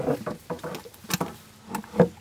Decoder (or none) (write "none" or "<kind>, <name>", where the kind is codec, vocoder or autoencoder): none